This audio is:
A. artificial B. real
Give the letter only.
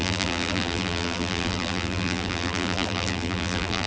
A